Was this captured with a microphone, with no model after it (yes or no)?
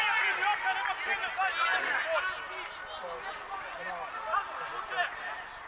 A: yes